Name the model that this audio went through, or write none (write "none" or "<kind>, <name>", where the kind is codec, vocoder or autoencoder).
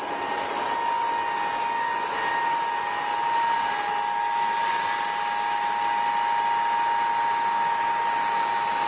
none